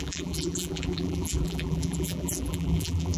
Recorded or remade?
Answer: remade